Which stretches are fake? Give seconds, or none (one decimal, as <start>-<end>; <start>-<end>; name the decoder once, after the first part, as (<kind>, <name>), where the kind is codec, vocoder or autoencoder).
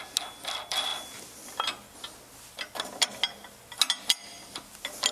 none